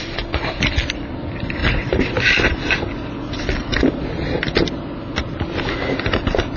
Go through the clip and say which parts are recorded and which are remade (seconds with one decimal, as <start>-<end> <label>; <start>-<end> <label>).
0.0-6.6 recorded